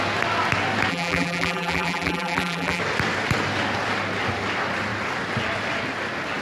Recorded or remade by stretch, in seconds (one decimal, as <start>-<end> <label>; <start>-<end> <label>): 0.0-0.9 recorded; 0.9-2.8 remade; 2.8-6.4 recorded